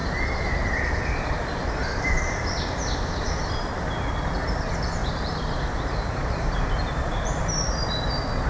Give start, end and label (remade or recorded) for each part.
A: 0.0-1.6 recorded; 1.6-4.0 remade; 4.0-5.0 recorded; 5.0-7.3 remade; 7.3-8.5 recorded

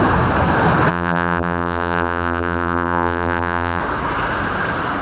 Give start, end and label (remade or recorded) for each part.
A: 0.0-0.9 recorded; 0.9-3.8 remade; 3.8-5.0 recorded